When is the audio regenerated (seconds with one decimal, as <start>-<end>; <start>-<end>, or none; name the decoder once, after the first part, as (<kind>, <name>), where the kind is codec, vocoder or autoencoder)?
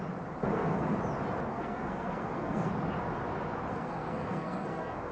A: 0.4-1.0 (codec, SNAC); 1.5-2.7; 3.7-5.1